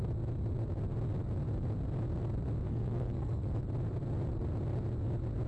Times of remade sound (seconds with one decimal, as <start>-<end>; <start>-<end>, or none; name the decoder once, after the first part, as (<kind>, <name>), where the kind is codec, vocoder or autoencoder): 2.7-3.5 (codec, SNAC)